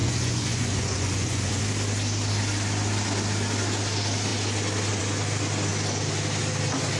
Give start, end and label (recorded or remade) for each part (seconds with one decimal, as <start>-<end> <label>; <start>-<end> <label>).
0.0-1.6 remade; 1.6-7.0 recorded